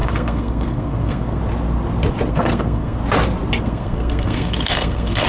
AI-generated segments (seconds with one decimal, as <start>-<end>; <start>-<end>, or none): 0.0-1.4; 2.3-3.0; 3.6-5.3